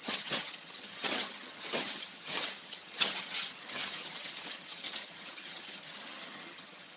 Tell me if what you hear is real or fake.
fake